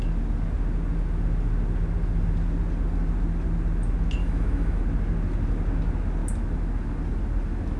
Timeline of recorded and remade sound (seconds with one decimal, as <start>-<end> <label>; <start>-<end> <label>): 0.0-4.2 recorded; 4.2-4.8 remade; 4.8-7.8 recorded